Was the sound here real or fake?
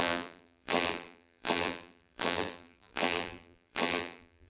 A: fake